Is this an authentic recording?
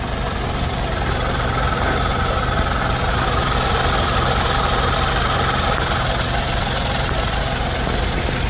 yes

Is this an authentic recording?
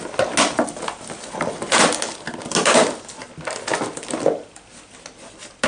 yes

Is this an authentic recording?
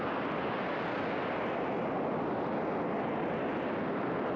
yes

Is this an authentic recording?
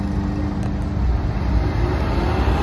yes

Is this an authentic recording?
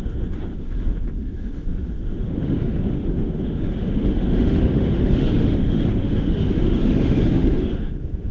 no